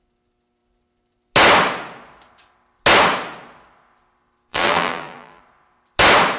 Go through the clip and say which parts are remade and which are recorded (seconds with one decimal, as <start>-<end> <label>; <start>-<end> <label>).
0.0-4.5 recorded; 4.5-5.4 remade; 5.4-6.4 recorded